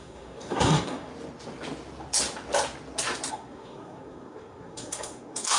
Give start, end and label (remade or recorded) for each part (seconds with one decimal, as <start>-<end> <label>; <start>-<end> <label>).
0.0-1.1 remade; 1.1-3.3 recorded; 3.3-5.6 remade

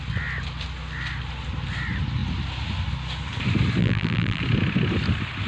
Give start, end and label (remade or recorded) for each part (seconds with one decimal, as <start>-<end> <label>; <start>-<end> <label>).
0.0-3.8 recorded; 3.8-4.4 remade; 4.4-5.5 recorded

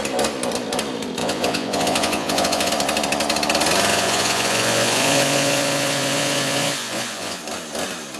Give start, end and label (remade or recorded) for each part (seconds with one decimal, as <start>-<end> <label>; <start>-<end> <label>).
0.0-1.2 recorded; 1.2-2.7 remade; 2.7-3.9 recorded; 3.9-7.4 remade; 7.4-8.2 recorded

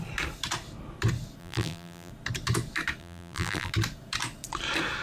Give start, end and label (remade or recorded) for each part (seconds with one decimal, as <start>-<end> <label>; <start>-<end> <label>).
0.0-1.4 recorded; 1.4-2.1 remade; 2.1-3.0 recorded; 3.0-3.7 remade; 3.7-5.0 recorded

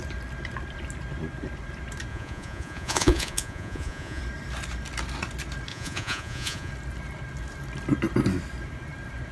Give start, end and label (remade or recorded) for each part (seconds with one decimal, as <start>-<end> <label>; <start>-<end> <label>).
0.0-2.1 recorded; 2.1-4.2 remade; 4.2-5.7 recorded; 5.7-6.7 remade; 6.7-9.3 recorded

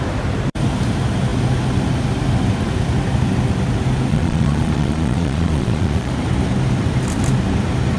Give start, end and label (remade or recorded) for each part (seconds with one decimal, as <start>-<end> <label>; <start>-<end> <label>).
0.0-4.1 recorded; 4.1-6.1 remade; 6.1-8.0 recorded

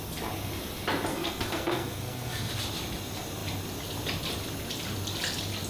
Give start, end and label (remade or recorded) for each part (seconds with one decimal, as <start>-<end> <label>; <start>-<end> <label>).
0.0-1.1 recorded; 1.1-2.5 remade; 2.5-5.7 recorded

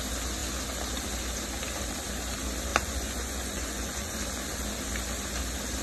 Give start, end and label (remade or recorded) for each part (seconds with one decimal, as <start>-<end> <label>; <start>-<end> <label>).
0.0-2.7 recorded; 2.7-4.2 remade; 4.2-5.8 recorded